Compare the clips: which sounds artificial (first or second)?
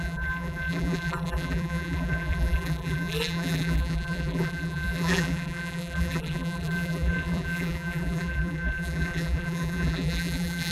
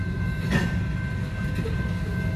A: first